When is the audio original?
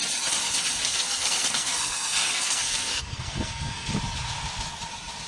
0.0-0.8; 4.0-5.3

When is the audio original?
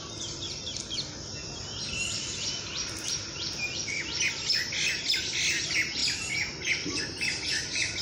0.0-8.0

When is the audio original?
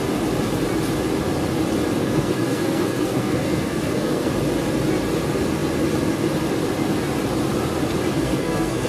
0.0-2.0; 4.3-8.1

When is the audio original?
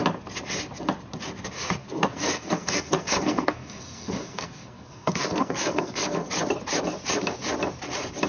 0.0-1.8; 6.3-8.3